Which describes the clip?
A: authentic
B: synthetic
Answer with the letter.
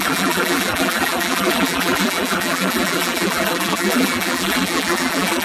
B